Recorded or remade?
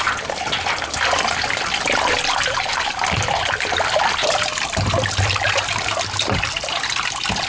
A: recorded